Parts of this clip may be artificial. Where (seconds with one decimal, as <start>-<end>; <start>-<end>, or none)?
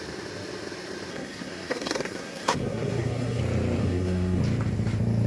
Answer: 1.1-3.4; 3.8-4.4